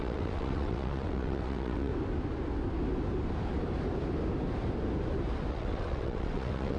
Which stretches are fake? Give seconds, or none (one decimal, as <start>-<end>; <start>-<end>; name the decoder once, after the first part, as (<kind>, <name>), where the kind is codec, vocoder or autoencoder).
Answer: 0.0-1.9 (vocoder, WaveNeXt); 5.5-6.8